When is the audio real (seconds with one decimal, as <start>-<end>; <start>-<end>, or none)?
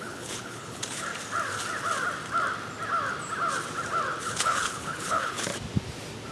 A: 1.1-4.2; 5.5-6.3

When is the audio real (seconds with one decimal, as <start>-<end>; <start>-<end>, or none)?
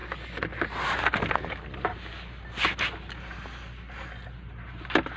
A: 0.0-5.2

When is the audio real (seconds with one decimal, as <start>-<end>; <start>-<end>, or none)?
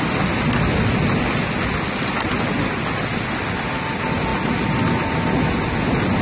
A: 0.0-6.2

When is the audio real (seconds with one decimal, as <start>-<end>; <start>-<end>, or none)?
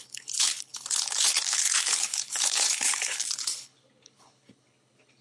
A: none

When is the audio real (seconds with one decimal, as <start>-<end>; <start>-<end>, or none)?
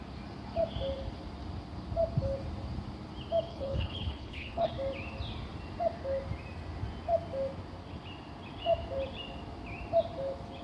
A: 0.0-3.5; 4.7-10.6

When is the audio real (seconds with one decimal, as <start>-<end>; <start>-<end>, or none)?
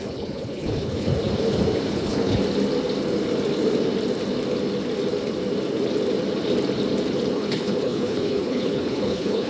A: 1.1-1.9; 2.4-7.3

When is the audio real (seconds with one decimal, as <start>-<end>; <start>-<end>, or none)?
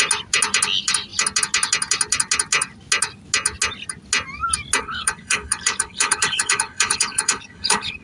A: 0.0-4.8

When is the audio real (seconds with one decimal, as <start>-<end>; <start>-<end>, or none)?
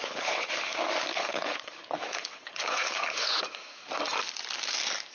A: 0.5-1.1; 3.4-5.1